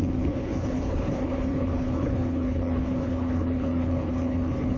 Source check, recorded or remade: remade